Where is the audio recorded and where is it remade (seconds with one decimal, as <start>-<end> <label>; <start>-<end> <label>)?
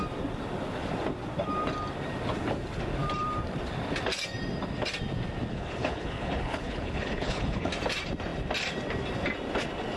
0.0-5.5 recorded; 5.5-7.7 remade; 7.7-10.0 recorded